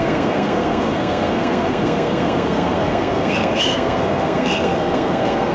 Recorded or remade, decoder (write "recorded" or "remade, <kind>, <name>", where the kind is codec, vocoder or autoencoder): remade, codec, SNAC